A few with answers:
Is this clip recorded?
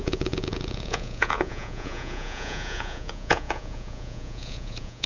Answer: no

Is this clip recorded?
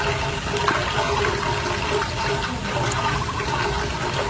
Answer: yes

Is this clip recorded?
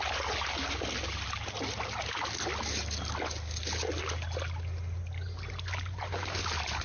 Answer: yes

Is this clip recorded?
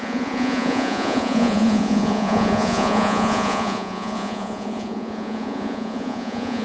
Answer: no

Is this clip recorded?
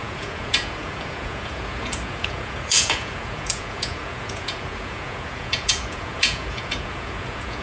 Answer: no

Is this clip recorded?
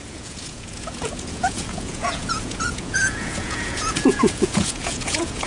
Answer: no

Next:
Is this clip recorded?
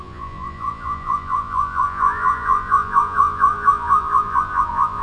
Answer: no